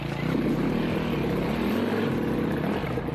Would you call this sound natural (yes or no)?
yes